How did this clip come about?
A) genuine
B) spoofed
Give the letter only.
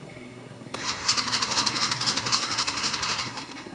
B